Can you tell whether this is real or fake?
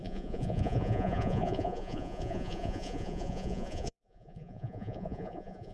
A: fake